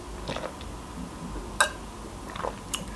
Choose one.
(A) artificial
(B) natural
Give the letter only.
B